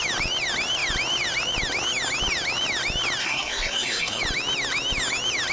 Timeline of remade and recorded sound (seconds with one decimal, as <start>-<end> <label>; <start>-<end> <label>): 0.0-3.2 recorded; 3.2-4.2 remade; 4.2-5.5 recorded

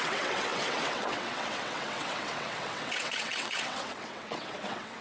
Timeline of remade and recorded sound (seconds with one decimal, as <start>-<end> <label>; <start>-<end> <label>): 0.0-5.0 remade

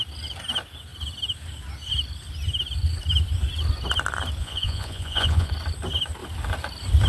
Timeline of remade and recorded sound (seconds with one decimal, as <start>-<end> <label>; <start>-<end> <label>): 0.0-4.4 recorded; 4.4-5.5 remade; 5.5-7.1 recorded

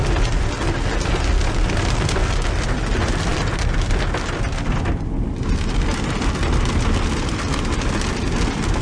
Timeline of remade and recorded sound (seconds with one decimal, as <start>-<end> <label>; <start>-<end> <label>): 0.0-8.8 recorded

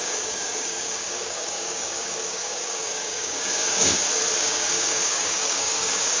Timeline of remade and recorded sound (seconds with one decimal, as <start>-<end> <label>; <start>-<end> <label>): 0.0-3.9 remade; 3.9-4.4 recorded; 4.4-6.2 remade

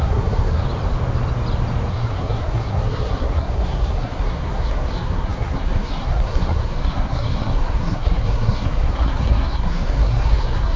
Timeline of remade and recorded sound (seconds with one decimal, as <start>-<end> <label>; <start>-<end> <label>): 0.0-0.6 remade; 0.6-1.9 recorded; 1.9-10.8 remade